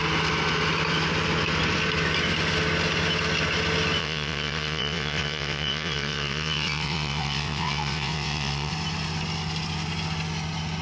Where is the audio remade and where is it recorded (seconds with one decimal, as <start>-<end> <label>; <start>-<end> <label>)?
0.0-4.0 recorded; 4.0-8.7 remade; 8.7-10.8 recorded